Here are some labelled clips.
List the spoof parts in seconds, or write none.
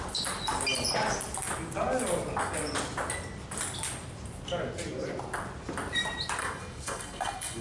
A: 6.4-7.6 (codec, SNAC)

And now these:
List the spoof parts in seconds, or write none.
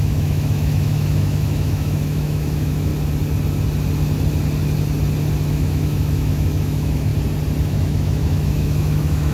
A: 0.0-2.9 (autoencoder, DAC-VAE); 5.5-7.1; 7.6-9.3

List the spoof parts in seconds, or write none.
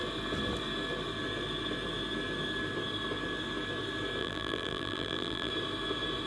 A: 4.2-5.5 (vocoder, BigVGAN v2)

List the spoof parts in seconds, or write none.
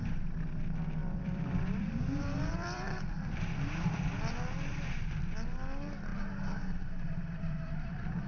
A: 1.0-3.7 (vocoder, BigVGAN v2)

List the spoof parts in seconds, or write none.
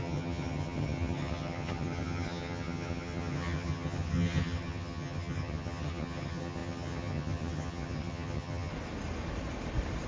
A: 0.0-8.7 (vocoder, HiFi-GAN)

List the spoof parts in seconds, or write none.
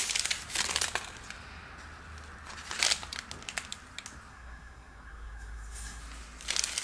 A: 4.3-6.0 (codec, SNAC)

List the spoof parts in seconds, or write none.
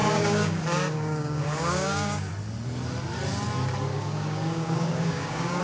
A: 0.0-2.3 (codec, DAC); 3.9-5.6